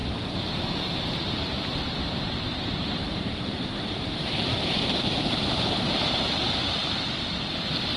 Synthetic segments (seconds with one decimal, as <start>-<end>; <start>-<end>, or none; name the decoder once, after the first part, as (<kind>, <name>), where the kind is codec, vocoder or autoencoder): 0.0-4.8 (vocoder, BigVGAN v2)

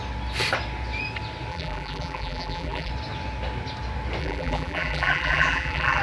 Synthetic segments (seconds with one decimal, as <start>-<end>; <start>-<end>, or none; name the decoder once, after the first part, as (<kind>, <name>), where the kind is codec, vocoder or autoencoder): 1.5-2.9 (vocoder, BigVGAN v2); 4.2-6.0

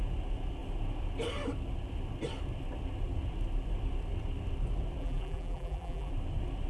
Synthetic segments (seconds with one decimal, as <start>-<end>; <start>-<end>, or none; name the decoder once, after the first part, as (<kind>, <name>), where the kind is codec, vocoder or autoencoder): 5.0-6.1 (vocoder, BigVGAN v2)